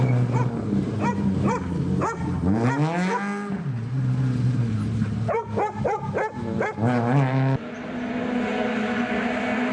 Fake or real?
real